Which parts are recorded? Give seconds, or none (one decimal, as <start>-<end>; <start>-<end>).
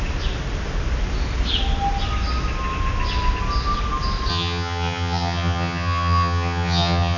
0.0-4.3